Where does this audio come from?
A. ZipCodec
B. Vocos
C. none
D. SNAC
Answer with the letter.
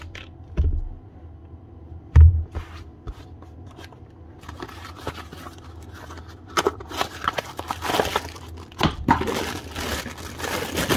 C